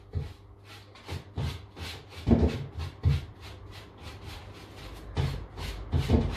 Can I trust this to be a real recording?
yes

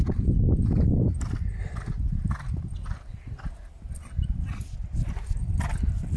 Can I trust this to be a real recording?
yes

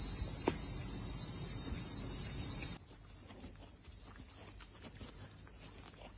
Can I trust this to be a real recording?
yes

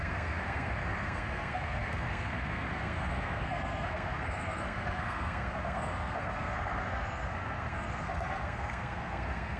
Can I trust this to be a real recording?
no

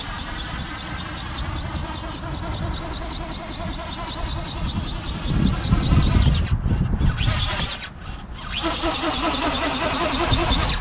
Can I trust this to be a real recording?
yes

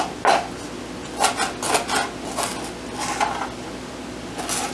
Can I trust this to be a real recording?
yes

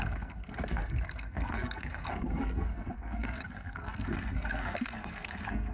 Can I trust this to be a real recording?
no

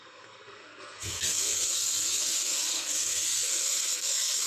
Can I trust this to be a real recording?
no